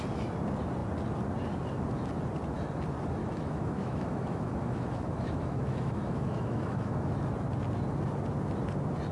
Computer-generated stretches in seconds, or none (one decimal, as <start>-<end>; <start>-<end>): 3.2-7.1